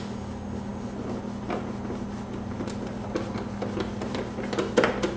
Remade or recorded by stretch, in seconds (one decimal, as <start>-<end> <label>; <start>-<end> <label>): 0.0-5.2 recorded